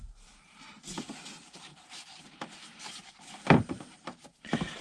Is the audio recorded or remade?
remade